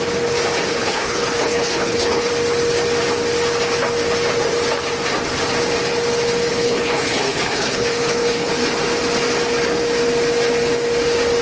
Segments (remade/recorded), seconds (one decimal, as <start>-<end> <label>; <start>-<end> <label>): 0.0-0.8 recorded; 0.8-2.3 remade; 2.3-6.5 recorded; 6.5-8.5 remade; 8.5-11.4 recorded